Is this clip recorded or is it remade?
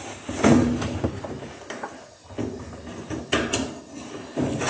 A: recorded